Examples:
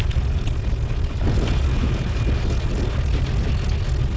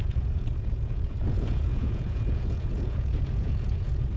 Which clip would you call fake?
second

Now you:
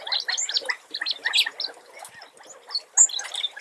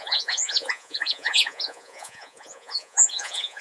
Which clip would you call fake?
second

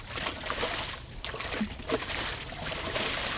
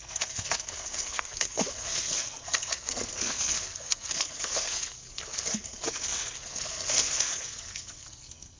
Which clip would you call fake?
second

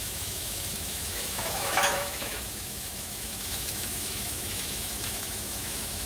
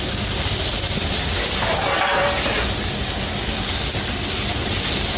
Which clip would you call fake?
first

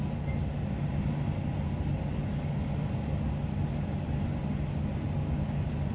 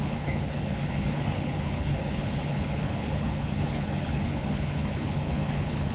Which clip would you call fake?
second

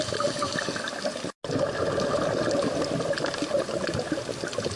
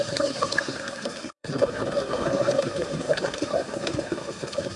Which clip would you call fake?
second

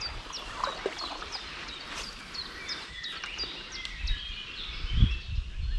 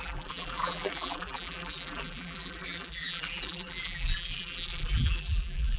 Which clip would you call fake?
second